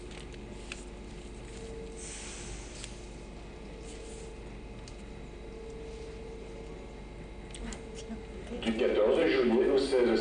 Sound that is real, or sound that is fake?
real